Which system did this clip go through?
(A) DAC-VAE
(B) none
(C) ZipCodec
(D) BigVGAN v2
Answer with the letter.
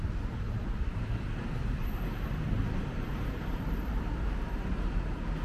D